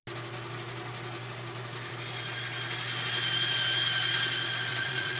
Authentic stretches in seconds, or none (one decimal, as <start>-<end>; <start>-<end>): 0.0-4.7